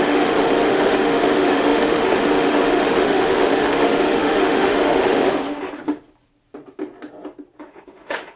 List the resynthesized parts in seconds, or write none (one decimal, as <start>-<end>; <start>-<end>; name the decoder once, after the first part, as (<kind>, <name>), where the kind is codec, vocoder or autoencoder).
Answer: 0.0-5.8 (autoencoder, DAC-VAE); 7.6-8.4